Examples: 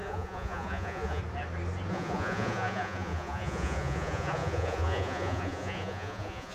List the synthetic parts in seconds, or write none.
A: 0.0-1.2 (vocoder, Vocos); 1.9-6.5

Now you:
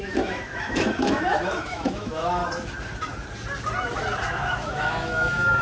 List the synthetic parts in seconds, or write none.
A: 0.0-2.4 (autoencoder, DAC-VAE); 4.3-5.6